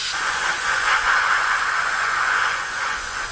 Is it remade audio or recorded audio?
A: remade